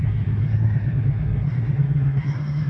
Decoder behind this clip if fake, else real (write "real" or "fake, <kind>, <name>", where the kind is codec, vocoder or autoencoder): fake, codec, SNAC